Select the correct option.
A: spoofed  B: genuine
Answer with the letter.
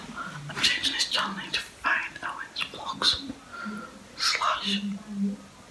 B